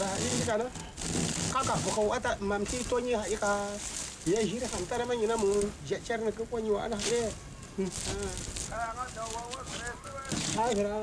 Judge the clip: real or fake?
real